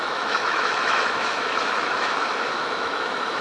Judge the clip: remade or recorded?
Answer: remade